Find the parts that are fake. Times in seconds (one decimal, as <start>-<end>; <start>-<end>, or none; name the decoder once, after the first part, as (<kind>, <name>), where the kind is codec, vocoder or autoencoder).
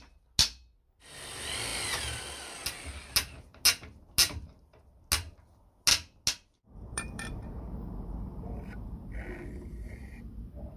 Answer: 6.9-9.0 (vocoder, BigVGAN v2)